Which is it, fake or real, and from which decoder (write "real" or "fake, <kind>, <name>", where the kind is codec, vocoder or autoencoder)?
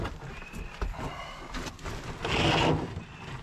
real